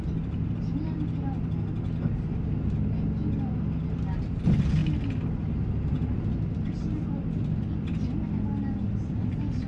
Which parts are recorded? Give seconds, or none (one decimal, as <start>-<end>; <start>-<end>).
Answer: 0.0-9.7